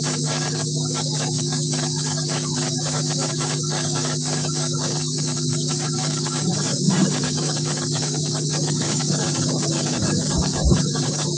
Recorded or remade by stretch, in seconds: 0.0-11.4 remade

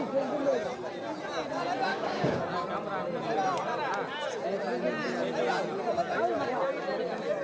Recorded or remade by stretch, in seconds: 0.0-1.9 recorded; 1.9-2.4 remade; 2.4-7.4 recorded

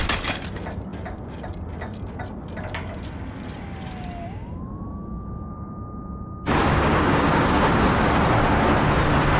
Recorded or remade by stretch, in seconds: 0.0-6.6 recorded; 6.6-7.7 remade; 7.7-9.4 recorded

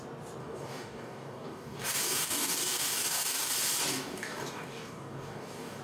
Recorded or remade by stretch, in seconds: 0.0-0.4 recorded; 0.4-3.5 remade; 3.5-3.9 recorded; 3.9-5.8 remade

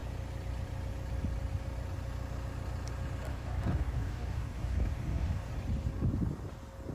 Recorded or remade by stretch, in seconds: 0.0-3.3 recorded; 3.3-5.5 remade; 5.5-6.9 recorded

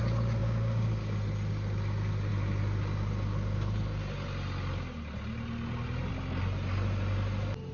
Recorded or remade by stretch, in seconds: 0.0-0.4 recorded; 0.4-1.1 remade; 1.1-7.7 recorded

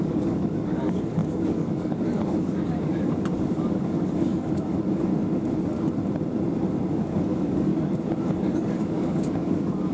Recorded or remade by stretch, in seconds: 0.0-5.1 remade; 5.1-6.9 recorded; 6.9-7.7 remade; 7.7-8.2 recorded; 8.2-9.9 remade

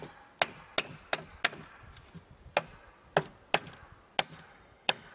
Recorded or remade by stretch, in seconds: 0.0-4.5 recorded; 4.5-5.1 remade